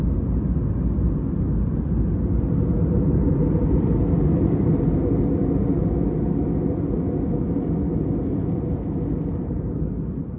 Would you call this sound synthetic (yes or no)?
no